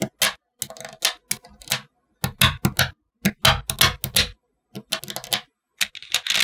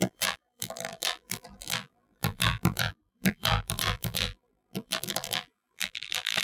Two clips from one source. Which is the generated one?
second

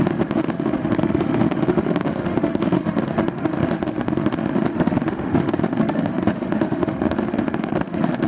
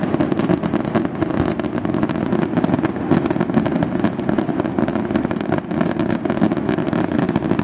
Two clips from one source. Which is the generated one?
first